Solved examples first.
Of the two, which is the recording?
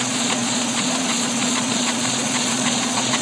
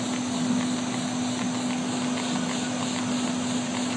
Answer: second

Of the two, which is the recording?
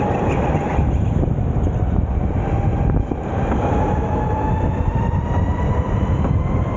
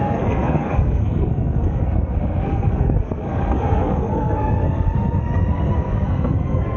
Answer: first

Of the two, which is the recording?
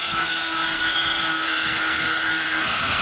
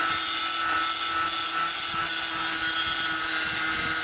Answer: second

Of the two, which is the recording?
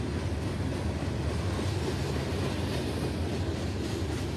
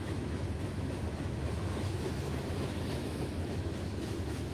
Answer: first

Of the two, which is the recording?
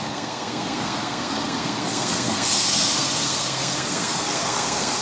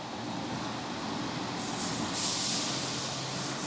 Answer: second